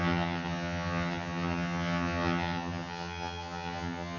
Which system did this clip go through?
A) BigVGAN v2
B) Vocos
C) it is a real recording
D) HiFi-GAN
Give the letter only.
D